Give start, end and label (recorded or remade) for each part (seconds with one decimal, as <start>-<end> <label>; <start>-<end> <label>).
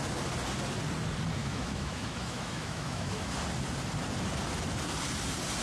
0.0-1.4 recorded; 1.4-3.3 remade; 3.3-5.6 recorded